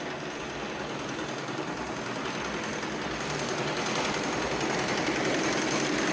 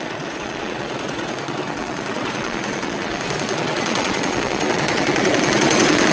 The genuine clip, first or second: first